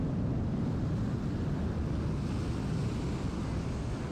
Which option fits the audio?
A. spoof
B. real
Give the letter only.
B